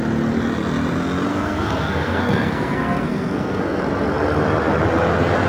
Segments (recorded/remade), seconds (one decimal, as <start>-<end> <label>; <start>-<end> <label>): 0.0-1.3 recorded; 1.3-3.8 remade; 3.8-5.5 recorded